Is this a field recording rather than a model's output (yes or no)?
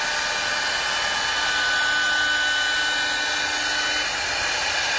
yes